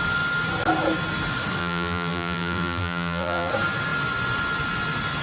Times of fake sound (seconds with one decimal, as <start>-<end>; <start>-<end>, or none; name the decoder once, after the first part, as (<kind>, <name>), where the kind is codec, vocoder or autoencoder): 1.6-3.5 (vocoder, BigVGAN v2)